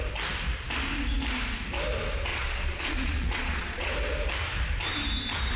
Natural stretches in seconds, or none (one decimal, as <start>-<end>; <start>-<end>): 0.0-2.3; 3.9-5.6

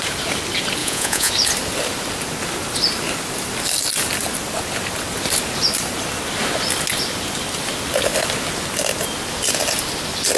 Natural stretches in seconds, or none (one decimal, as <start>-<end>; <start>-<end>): 0.0-0.8; 1.3-10.4

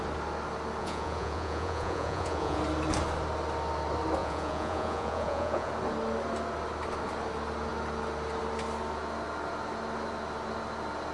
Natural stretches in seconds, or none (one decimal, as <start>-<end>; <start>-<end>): 0.0-0.8; 2.6-4.2; 5.7-11.1